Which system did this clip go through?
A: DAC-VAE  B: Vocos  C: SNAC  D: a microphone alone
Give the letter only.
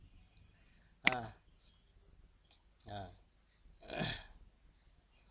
D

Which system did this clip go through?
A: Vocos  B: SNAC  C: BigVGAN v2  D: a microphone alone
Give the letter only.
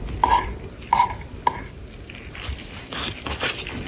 D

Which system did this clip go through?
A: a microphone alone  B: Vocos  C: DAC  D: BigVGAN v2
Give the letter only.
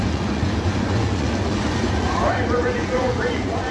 B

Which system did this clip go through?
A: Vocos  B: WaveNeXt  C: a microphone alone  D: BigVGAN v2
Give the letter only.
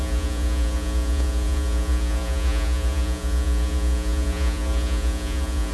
A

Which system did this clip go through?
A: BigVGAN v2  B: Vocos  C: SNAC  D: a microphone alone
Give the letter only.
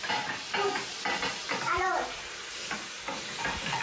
D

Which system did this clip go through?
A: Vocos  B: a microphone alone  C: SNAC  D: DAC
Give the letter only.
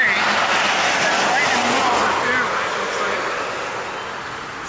B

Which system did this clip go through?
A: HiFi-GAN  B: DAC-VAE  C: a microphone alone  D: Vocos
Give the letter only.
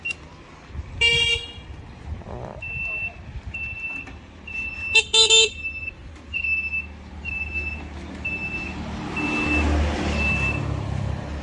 C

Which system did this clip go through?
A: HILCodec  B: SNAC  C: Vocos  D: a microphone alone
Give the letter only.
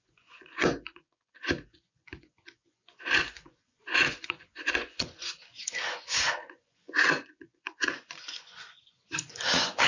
C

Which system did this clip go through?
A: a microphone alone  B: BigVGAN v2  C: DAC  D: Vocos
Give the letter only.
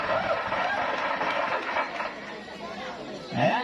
A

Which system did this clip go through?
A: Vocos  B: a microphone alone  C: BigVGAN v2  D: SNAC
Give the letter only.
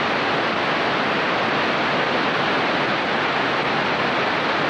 B